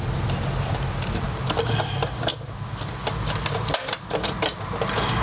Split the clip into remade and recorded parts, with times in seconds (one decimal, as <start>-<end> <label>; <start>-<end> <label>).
0.0-5.2 recorded